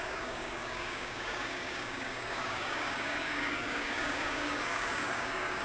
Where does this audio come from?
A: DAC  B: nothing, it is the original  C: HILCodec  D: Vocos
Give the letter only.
A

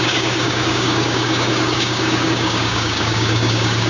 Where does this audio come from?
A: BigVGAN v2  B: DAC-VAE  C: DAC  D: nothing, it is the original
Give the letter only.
C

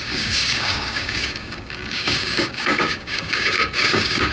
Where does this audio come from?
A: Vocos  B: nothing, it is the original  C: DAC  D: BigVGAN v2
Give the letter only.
C